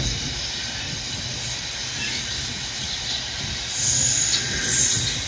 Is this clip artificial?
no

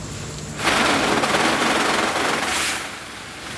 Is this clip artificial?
no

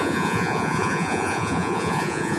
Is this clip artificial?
yes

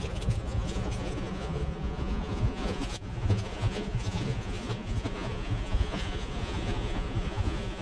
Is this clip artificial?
yes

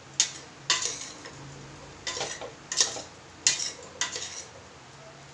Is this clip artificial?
no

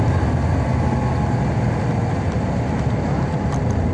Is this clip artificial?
no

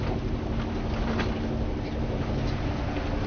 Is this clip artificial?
no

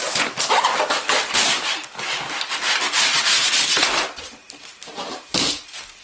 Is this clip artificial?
no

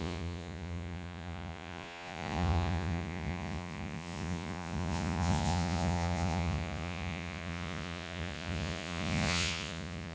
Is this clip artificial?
yes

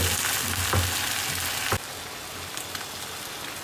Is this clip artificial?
no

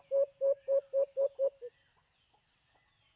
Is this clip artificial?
no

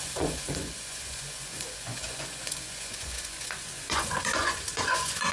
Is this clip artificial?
yes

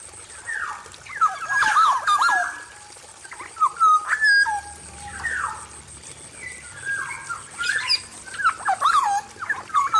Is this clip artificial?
no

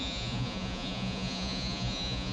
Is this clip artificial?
yes